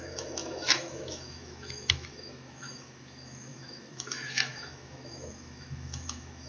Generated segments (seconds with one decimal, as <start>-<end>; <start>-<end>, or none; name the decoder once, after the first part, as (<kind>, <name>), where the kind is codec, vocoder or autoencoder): 0.0-6.5 (autoencoder, DAC-VAE)